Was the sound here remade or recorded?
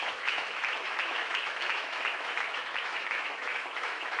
remade